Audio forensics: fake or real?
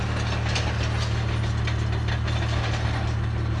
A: real